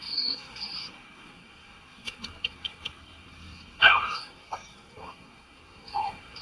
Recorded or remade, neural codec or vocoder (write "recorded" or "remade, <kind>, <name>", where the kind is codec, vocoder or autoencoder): remade, codec, SNAC